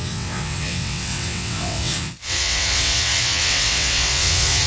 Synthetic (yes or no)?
yes